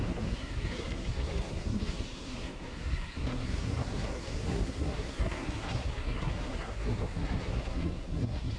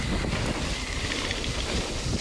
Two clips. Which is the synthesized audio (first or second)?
first